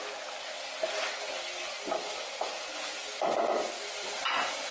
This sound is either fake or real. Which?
real